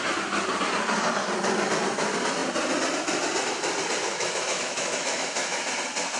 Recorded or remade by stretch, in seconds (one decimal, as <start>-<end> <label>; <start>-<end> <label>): 0.0-4.1 recorded; 4.1-5.7 remade; 5.7-6.2 recorded